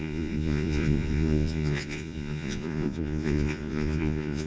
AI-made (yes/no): yes